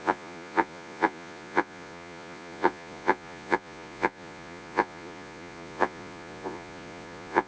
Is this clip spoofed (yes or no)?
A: yes